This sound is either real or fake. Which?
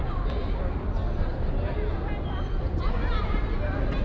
real